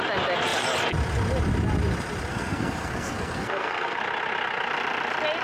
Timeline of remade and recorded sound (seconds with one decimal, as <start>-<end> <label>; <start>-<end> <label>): 0.0-2.3 recorded; 2.3-4.0 remade; 4.0-5.4 recorded